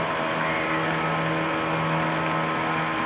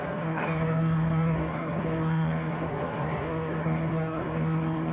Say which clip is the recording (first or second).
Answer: first